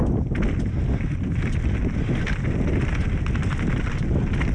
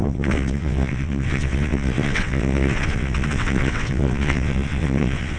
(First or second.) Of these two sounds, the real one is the first